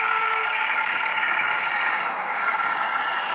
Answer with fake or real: fake